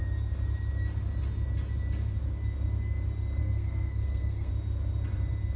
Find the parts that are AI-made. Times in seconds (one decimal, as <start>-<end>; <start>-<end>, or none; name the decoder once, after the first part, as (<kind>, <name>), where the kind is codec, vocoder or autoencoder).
3.4-4.5 (codec, SNAC)